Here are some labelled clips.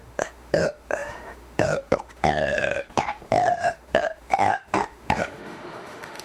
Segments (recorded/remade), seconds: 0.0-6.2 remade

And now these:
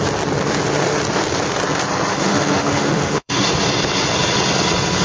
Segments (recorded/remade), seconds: 0.0-2.1 recorded; 2.1-3.4 remade; 3.4-5.0 recorded

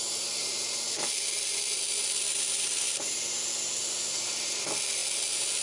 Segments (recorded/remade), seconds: 0.0-5.6 recorded

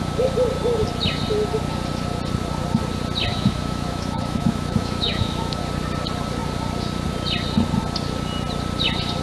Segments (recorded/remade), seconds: 0.0-3.3 recorded; 3.3-5.6 remade; 5.6-9.2 recorded